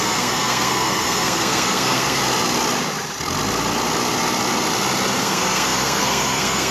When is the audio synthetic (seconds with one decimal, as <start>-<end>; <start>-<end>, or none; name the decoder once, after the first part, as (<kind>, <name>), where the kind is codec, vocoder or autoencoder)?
0.0-2.2 (codec, SNAC); 5.2-6.7